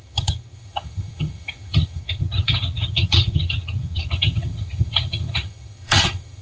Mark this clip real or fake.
fake